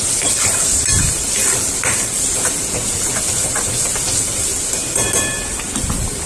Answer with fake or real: real